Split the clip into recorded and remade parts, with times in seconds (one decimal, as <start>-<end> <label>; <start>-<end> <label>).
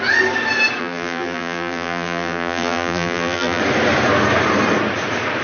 0.0-0.8 recorded; 0.8-3.6 remade; 3.6-5.4 recorded